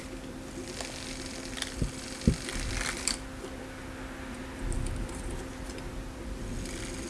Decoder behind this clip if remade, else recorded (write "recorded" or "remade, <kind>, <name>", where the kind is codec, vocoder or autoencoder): recorded